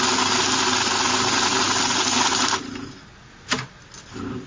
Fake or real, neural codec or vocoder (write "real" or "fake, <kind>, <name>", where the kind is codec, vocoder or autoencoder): real